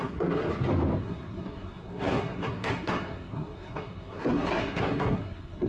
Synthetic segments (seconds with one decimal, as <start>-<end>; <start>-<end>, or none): 0.0-0.4; 1.0-5.7